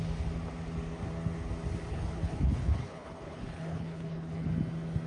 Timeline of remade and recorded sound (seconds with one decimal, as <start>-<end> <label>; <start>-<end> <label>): 0.0-1.9 recorded; 1.9-4.5 remade; 4.5-5.1 recorded